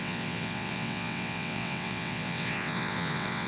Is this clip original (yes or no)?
no